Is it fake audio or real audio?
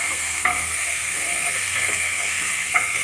fake